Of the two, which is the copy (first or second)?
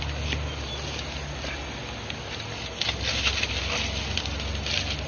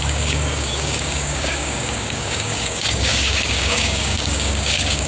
second